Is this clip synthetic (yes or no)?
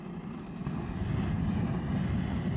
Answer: no